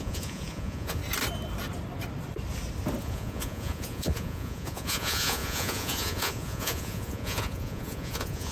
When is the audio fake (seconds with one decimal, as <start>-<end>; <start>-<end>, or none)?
0.0-1.0; 3.0-8.5